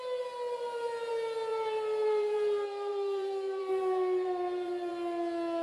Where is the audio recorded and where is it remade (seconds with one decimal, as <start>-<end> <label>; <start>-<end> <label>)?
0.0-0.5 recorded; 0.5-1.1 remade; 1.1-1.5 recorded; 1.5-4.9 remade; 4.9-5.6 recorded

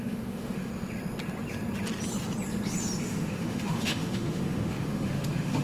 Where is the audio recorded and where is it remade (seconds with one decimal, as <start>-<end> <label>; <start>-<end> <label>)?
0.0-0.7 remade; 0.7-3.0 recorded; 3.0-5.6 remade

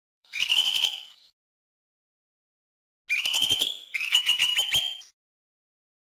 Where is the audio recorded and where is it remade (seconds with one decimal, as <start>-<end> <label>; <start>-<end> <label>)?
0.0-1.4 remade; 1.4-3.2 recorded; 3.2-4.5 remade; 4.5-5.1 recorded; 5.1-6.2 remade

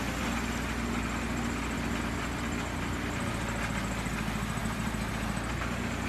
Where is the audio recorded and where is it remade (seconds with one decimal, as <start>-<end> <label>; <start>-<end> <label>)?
0.0-4.6 recorded; 4.6-5.1 remade; 5.1-6.1 recorded

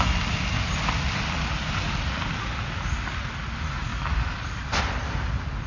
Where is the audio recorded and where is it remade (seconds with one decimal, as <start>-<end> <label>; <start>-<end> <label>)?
0.0-5.7 recorded